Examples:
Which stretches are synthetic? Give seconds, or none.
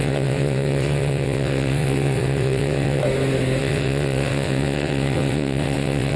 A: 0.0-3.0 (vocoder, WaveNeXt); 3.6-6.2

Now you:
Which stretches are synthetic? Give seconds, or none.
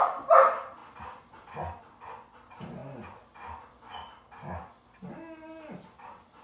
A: none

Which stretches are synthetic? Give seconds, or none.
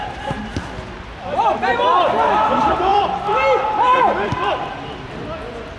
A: 0.0-0.4 (vocoder, BigVGAN v2); 1.9-5.8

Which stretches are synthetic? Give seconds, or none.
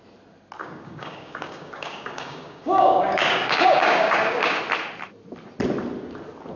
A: 0.6-4.6 (codec, DAC)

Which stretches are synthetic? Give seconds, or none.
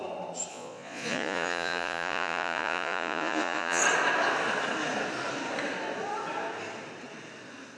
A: 0.5-3.8 (vocoder, Vocos)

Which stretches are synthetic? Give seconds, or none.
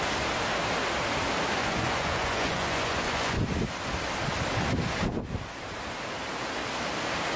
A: 1.6-3.4 (vocoder, Vocos)